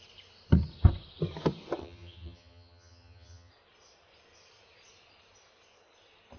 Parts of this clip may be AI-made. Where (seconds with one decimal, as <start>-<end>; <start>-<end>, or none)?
1.8-3.5